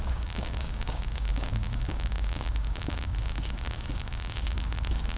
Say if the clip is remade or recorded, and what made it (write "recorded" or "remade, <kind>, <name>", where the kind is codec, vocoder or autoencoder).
remade, codec, DAC